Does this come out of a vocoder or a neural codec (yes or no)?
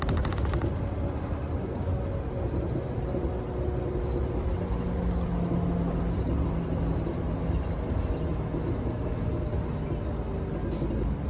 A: no